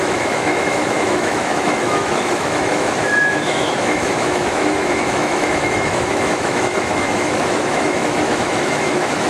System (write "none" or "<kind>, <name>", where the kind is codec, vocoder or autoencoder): autoencoder, DAC-VAE